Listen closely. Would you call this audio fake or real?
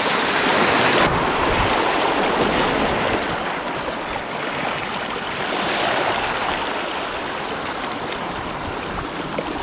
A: real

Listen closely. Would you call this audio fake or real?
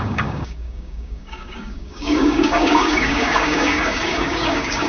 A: fake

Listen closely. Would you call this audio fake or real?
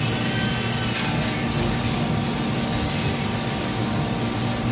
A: real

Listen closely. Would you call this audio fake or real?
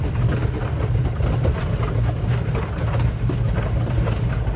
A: real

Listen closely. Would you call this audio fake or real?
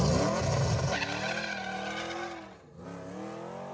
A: real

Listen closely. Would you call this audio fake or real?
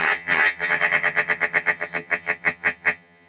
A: fake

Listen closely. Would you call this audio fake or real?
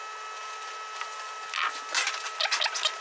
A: real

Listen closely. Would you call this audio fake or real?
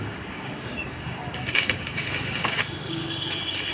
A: fake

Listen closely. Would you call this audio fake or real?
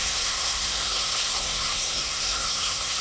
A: fake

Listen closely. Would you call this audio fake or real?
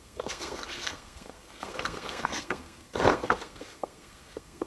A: fake